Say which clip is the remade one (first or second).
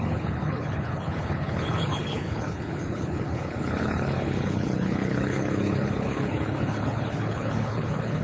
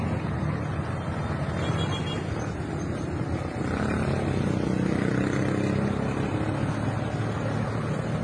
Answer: first